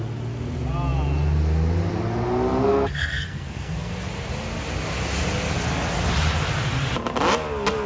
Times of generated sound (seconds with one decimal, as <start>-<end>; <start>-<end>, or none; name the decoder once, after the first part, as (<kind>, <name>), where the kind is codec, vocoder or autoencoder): 2.7-3.9 (codec, SNAC)